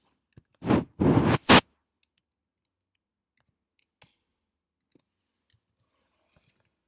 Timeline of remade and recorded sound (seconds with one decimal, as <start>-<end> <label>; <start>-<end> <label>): 0.0-6.9 recorded